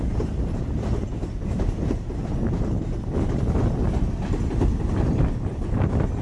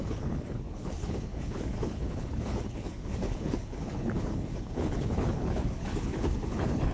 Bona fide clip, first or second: first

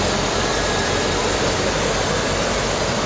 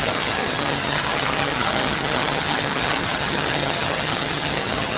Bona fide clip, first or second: first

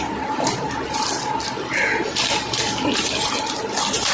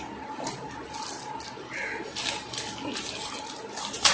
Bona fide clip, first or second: second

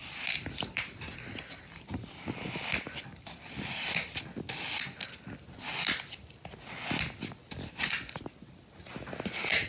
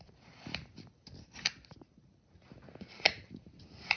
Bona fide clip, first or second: first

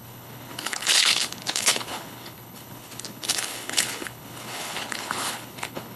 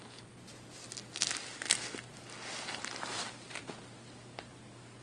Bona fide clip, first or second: second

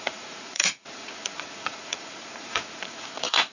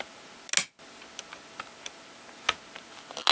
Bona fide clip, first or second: second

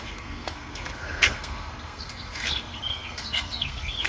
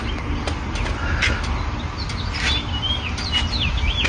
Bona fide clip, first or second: second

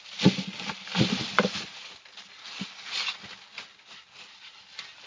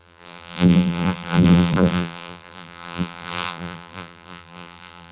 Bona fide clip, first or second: first